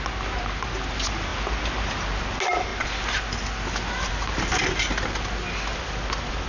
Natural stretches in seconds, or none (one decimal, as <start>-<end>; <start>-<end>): 0.0-6.5